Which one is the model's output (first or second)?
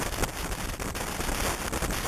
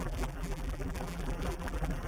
second